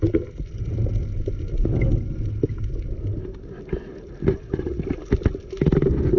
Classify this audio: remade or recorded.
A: recorded